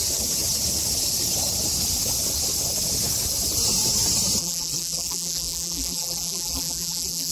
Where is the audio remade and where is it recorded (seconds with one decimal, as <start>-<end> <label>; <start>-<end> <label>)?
0.0-4.4 recorded; 4.4-7.3 remade